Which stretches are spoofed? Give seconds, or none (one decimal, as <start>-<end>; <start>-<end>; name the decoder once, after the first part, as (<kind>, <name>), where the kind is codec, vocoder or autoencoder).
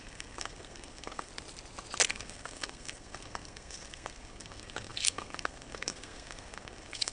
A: 0.0-1.3 (codec, SNAC); 2.1-7.1